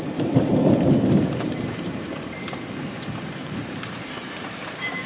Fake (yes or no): yes